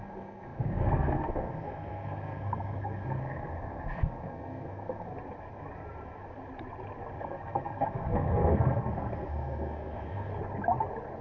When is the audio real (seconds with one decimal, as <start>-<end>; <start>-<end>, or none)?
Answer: 5.1-7.2; 10.3-11.2